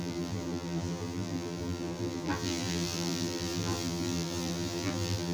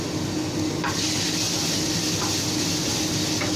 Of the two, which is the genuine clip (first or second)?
second